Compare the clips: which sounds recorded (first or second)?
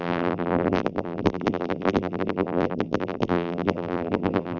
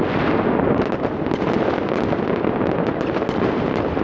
second